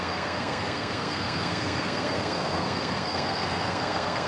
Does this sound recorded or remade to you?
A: remade